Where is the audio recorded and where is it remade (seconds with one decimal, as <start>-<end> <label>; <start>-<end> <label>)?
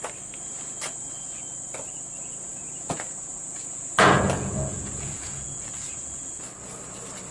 0.0-2.2 recorded; 2.2-6.3 remade; 6.3-7.3 recorded